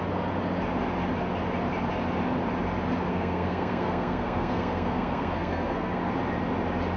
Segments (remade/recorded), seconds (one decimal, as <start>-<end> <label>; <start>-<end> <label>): 0.0-3.1 recorded; 3.1-6.0 remade; 6.0-7.0 recorded